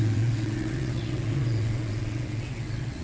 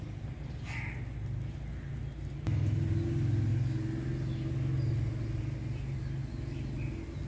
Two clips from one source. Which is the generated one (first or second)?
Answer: first